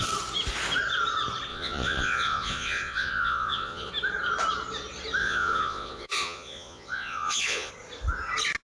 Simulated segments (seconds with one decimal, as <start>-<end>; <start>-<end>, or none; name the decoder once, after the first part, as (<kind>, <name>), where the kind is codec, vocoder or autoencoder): 1.5-3.9 (vocoder, Vocos); 5.2-7.7